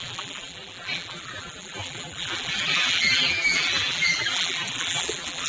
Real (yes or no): no